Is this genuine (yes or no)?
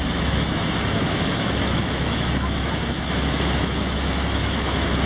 no